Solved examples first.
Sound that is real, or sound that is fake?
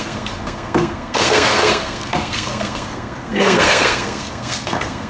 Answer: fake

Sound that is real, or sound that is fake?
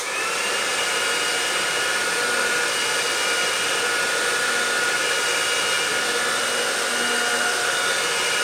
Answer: real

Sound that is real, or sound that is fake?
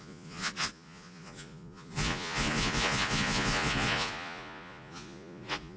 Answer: fake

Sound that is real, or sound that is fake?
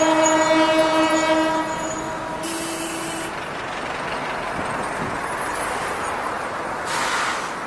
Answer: real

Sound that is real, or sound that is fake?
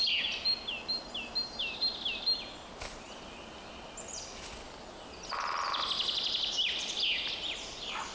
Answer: real